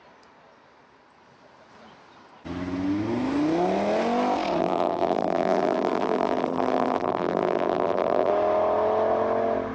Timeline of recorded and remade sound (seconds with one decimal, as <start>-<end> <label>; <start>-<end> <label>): 0.0-4.6 recorded; 4.6-8.3 remade; 8.3-9.7 recorded